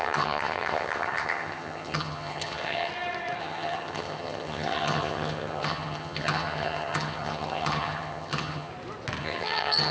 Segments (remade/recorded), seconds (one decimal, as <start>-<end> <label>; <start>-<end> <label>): 0.0-2.9 remade; 2.9-3.4 recorded; 3.4-8.7 remade; 8.7-9.2 recorded; 9.2-9.9 remade